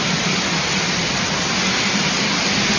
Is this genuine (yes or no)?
yes